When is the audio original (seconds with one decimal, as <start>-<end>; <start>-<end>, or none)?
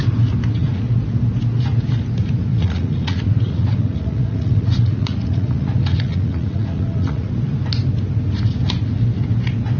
0.0-2.5; 7.3-9.8